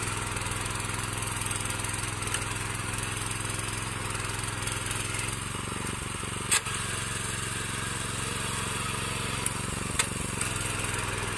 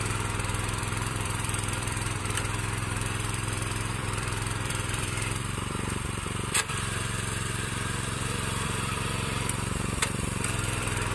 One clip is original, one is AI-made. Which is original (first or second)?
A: first